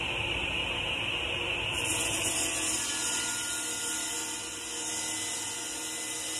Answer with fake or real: real